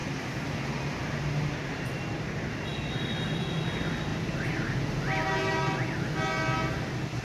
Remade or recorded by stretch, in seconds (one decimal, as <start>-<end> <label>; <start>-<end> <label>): 0.0-7.2 recorded